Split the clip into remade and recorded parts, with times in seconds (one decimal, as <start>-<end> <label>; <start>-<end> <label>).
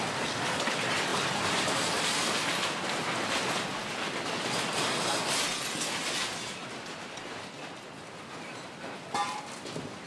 0.0-1.1 recorded; 1.1-2.0 remade; 2.0-10.1 recorded